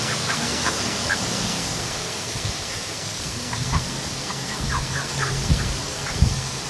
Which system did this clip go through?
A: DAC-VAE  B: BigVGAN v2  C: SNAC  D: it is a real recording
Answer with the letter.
C